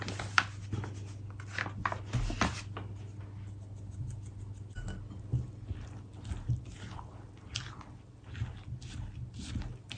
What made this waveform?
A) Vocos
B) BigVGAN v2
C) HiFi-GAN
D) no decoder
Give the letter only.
D